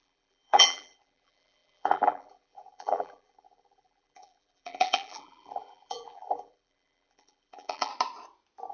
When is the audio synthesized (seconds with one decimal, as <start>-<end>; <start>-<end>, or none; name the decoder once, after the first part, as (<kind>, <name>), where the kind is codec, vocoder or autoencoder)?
0.0-7.9 (vocoder, BigVGAN v2)